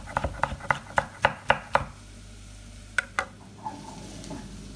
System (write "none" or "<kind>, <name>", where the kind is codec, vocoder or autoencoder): none